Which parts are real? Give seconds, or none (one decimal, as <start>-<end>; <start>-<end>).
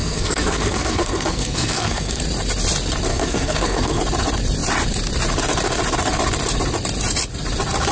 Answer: 2.2-3.1; 4.0-7.9